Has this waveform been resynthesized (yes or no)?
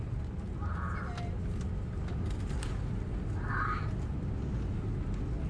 no